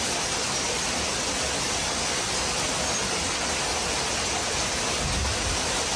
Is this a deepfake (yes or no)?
no